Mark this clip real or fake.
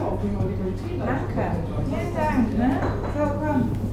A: real